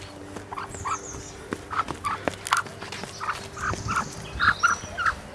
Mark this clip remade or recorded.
recorded